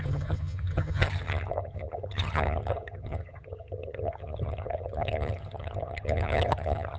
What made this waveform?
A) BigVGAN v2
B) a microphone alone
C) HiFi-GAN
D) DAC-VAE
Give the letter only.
C